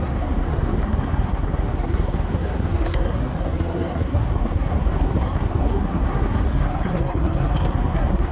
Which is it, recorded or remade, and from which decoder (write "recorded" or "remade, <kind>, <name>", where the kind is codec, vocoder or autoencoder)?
remade, codec, SNAC